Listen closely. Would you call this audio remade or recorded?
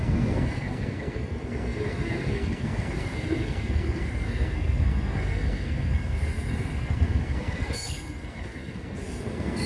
remade